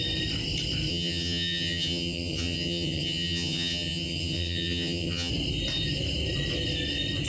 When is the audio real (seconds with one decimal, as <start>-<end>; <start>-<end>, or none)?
0.0-0.9; 5.3-7.3